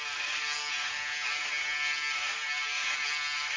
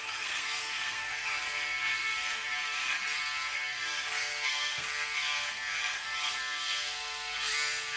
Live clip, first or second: first